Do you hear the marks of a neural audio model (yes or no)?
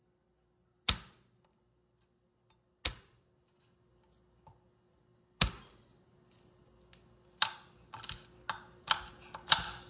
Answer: no